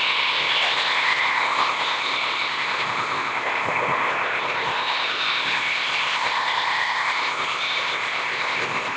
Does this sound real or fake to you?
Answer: fake